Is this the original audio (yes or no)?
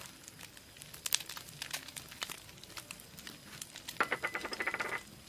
yes